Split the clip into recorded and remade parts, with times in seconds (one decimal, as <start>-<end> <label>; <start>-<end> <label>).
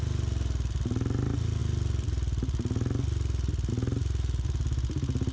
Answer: 0.0-5.3 recorded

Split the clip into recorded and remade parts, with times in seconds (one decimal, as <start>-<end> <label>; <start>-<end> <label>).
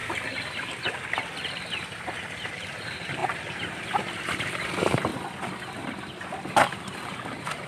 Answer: 0.0-2.7 recorded; 2.7-5.1 remade; 5.1-6.8 recorded; 6.8-7.7 remade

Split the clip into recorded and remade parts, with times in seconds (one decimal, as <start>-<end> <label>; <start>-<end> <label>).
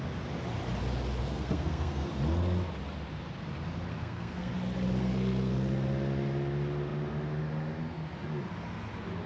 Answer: 0.0-1.2 recorded; 1.2-2.1 remade; 2.1-3.9 recorded; 3.9-4.5 remade; 4.5-5.0 recorded; 5.0-5.5 remade; 5.5-9.3 recorded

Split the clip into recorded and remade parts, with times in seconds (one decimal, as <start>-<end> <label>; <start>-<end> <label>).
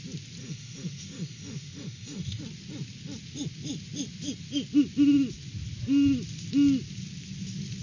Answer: 0.0-0.4 recorded; 0.4-2.4 remade; 2.4-7.8 recorded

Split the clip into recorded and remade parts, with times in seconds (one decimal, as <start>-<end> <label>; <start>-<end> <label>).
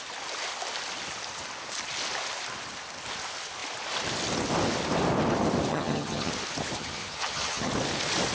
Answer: 0.0-5.7 recorded; 5.7-6.3 remade; 6.3-6.8 recorded; 6.8-7.7 remade; 7.7-8.3 recorded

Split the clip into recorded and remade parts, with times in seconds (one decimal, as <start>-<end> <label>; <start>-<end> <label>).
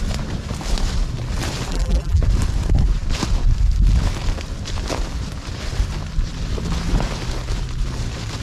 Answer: 0.0-1.7 recorded; 1.7-2.2 remade; 2.2-8.4 recorded